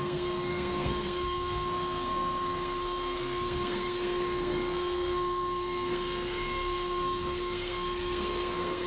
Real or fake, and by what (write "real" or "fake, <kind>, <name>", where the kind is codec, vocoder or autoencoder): fake, codec, SNAC